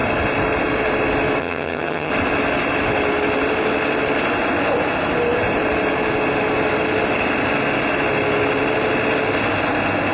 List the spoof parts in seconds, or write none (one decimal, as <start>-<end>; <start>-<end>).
1.4-2.1